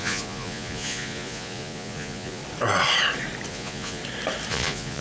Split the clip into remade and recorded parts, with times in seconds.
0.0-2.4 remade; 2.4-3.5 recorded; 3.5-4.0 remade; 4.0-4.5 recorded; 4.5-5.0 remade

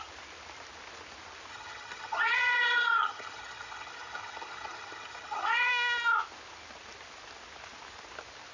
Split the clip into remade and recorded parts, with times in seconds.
0.0-1.5 recorded; 1.5-5.7 remade; 5.7-8.5 recorded

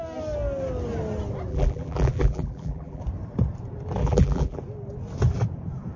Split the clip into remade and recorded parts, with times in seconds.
0.0-1.5 recorded; 1.5-3.0 remade; 3.0-4.0 recorded; 4.0-4.6 remade; 4.6-6.0 recorded

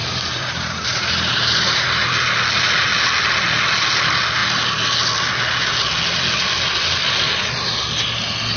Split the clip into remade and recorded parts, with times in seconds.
0.0-2.1 remade; 2.1-8.6 recorded

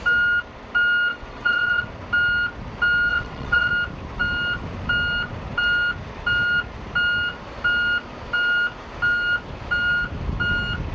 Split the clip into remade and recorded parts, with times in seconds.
0.0-1.1 recorded; 1.1-1.9 remade; 1.9-3.1 recorded; 3.1-3.7 remade; 3.7-10.9 recorded

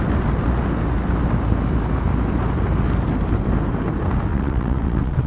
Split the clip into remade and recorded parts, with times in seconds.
0.0-4.3 recorded; 4.3-5.3 remade